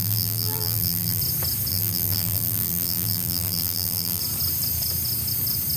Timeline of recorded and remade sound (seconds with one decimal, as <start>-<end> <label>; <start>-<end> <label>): 0.0-1.2 remade; 1.2-1.7 recorded; 1.7-4.2 remade; 4.2-5.8 recorded